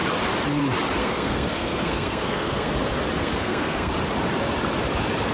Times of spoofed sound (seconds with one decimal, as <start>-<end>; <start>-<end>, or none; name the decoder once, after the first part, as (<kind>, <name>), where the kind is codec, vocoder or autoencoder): 1.0-2.7 (codec, SNAC); 3.2-3.9